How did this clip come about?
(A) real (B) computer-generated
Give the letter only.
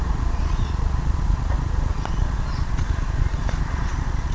B